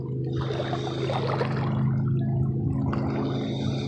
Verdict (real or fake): real